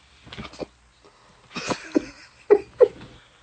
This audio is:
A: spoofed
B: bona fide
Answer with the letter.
B